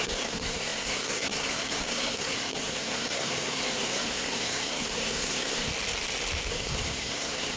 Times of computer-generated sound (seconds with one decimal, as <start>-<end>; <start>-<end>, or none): 0.0-5.7; 6.5-7.6

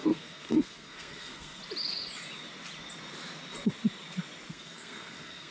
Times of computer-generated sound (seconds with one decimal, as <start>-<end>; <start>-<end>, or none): 0.0-1.6; 4.5-5.5

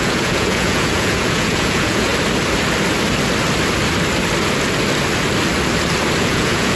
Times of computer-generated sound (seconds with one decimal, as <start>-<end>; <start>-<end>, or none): 0.0-2.1; 6.2-6.8

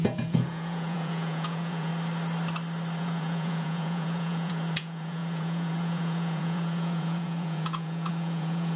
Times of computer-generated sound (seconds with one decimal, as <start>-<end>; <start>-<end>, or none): 0.0-1.9; 3.0-8.8

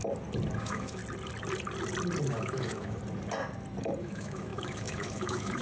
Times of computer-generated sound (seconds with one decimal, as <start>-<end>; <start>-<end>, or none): 0.6-1.0; 2.3-3.0; 4.0-5.6

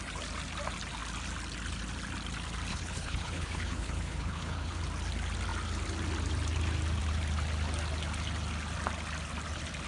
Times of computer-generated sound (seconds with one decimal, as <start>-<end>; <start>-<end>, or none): 2.7-4.8